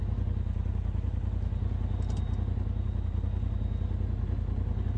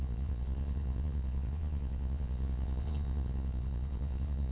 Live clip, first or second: first